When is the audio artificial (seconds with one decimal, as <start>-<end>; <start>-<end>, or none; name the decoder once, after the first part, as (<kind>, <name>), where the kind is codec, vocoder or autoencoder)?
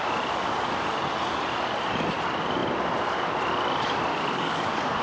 4.1-5.0 (codec, DAC)